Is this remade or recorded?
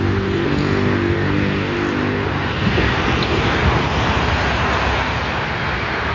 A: recorded